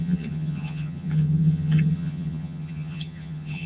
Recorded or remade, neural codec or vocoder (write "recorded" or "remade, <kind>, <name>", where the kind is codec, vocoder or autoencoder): remade, vocoder, HiFi-GAN